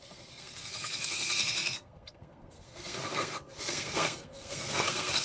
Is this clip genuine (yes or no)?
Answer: no